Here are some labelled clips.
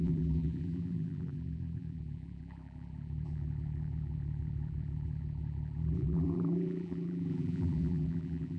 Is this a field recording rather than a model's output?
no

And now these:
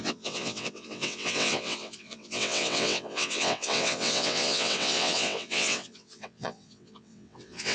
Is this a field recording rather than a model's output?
no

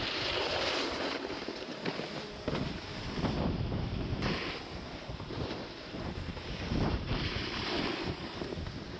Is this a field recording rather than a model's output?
no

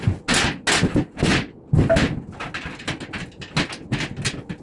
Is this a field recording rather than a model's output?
yes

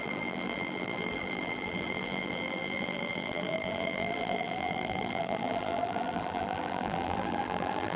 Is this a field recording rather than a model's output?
no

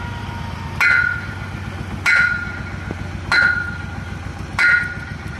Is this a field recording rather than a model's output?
yes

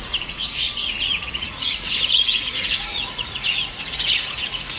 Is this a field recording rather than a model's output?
no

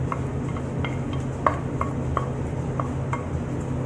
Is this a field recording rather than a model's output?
yes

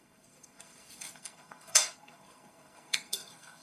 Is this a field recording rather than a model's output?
no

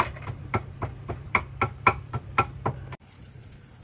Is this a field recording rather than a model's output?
no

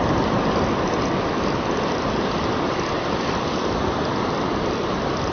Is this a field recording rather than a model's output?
yes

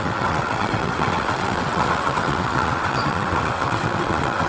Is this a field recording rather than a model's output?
no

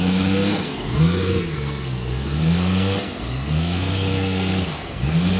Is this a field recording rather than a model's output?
no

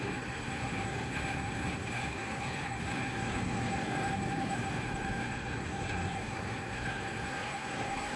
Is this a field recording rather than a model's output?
no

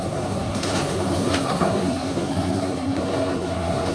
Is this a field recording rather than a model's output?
no